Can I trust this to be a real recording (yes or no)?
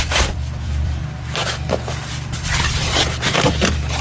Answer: no